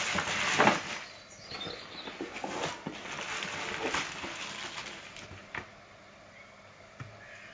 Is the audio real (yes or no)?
yes